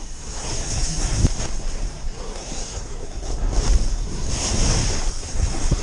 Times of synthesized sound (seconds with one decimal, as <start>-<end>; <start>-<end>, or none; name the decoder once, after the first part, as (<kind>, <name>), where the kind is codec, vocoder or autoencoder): 0.0-1.2 (codec, SNAC); 1.9-3.3; 3.9-4.3; 5.3-5.8